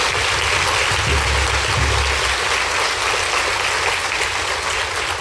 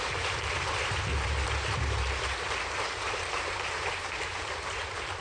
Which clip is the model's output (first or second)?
second